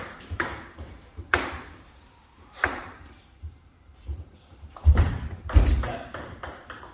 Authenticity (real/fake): fake